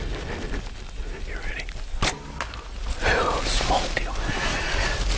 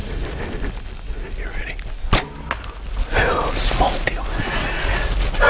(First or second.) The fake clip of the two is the first